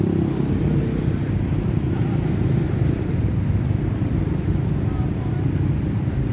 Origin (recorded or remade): remade